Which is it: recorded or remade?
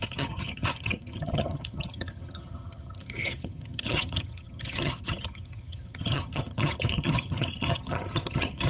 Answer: remade